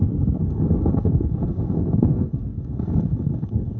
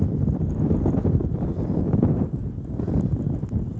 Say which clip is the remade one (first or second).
first